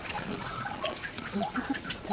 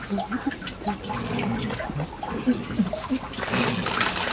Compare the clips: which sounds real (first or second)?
second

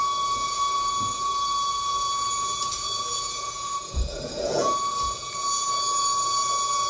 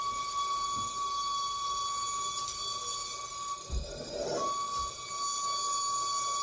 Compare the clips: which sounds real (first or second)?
second